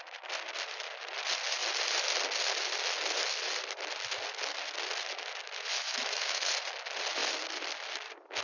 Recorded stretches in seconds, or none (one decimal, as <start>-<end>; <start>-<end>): 0.0-5.7; 6.5-8.4